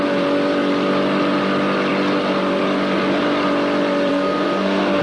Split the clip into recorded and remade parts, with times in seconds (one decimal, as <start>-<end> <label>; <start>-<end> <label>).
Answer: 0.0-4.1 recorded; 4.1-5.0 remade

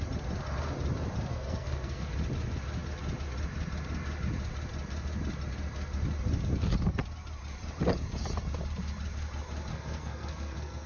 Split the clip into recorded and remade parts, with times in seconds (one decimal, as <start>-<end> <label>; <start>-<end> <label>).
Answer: 0.0-1.3 recorded; 1.3-2.1 remade; 2.1-9.7 recorded; 9.7-10.9 remade

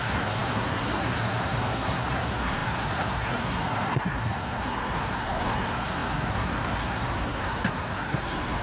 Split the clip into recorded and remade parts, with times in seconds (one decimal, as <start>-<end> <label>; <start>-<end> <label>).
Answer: 0.0-8.6 remade

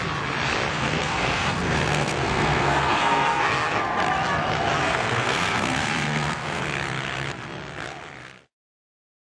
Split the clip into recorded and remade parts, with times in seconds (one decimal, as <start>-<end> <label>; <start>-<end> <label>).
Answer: 0.0-0.7 recorded; 0.7-3.9 remade; 3.9-4.8 recorded; 4.8-6.6 remade; 6.6-9.2 recorded

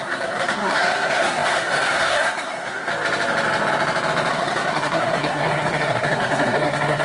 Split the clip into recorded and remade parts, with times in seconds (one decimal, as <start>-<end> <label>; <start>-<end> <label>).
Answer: 0.0-2.9 remade; 2.9-4.3 recorded; 4.3-7.0 remade

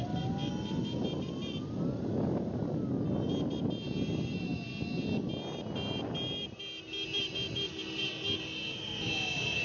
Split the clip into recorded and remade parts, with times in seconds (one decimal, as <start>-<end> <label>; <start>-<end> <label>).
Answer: 0.0-9.6 recorded